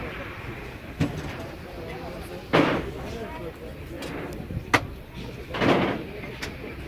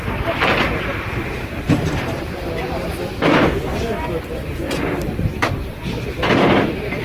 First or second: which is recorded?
first